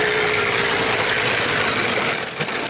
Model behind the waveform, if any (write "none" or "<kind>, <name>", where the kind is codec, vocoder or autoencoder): none